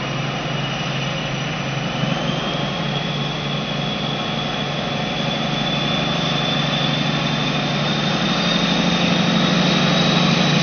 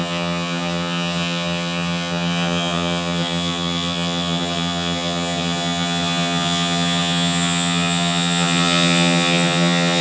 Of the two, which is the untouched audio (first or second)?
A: first